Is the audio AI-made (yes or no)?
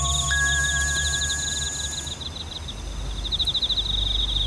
no